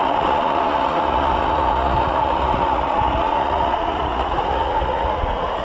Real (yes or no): no